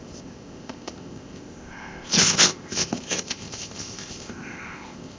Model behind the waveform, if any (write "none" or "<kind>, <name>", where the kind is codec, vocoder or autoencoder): codec, ZipCodec